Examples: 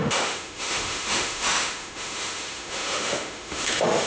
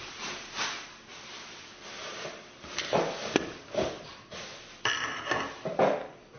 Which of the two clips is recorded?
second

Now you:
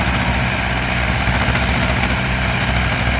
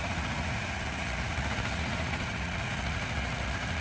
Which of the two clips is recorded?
first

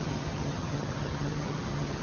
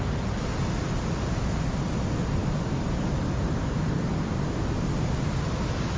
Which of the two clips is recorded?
second